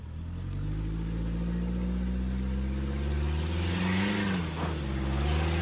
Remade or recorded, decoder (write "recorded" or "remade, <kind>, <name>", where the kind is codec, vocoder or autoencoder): recorded